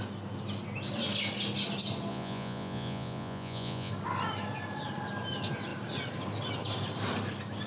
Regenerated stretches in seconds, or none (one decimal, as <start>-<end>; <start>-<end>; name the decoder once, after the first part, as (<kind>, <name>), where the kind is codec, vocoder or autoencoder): 2.1-3.9 (vocoder, Vocos)